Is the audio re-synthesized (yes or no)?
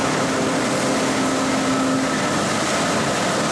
no